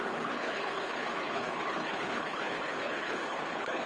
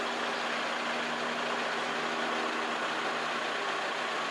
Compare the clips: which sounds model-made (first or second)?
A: first